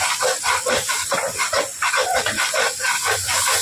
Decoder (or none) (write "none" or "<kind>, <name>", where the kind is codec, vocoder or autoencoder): vocoder, BigVGAN v2